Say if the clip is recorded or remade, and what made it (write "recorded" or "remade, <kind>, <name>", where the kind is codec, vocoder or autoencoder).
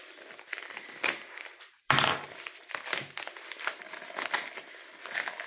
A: recorded